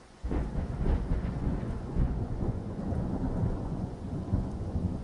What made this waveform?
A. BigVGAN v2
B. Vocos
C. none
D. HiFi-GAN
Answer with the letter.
B